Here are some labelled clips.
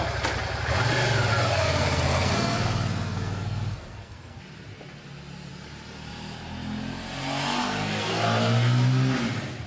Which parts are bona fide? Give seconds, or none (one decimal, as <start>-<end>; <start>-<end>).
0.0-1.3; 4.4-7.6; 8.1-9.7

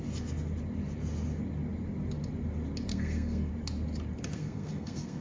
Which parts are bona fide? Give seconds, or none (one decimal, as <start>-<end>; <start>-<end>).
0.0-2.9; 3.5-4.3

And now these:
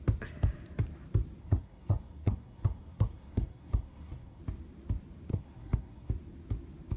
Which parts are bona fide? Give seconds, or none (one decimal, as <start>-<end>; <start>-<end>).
0.0-1.4; 4.4-5.3; 6.1-7.0

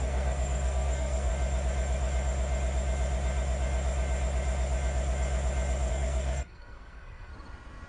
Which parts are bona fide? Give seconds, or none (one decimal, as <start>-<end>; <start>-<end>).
1.3-5.9; 7.3-7.9